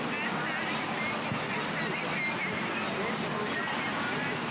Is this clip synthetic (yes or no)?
no